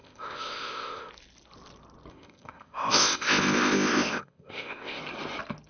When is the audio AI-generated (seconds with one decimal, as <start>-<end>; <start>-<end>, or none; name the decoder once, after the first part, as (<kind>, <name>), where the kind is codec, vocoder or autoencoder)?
0.0-1.1 (codec, ZipCodec); 2.1-5.0